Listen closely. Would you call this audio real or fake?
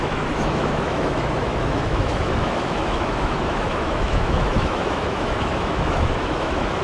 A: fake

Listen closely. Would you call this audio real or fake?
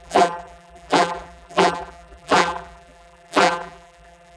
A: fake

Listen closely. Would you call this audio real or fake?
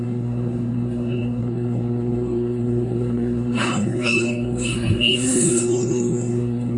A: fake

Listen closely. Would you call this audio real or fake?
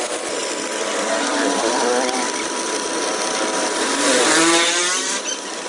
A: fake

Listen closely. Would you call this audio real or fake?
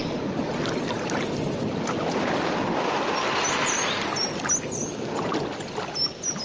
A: real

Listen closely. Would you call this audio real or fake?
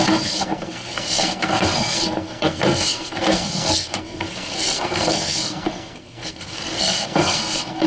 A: fake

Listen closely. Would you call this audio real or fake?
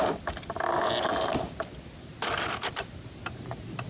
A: real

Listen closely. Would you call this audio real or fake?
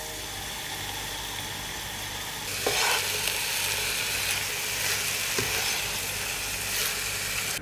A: real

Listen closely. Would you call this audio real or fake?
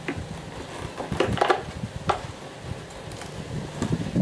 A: real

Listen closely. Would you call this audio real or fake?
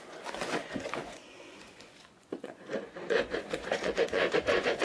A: fake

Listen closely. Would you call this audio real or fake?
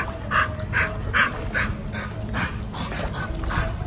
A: real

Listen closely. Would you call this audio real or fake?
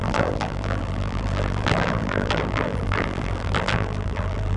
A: fake